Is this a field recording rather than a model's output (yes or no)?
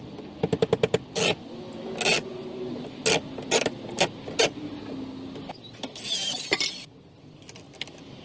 yes